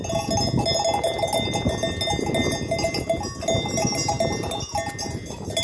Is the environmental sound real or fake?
real